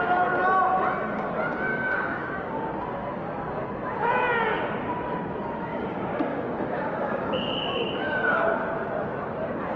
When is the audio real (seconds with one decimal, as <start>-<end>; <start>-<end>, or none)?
0.0-1.7; 2.6-5.7; 8.4-9.8